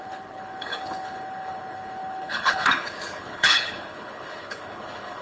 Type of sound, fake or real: fake